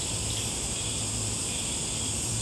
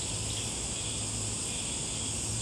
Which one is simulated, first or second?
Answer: first